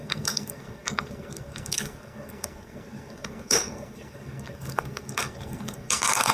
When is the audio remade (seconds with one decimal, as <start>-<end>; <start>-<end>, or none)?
0.0-6.3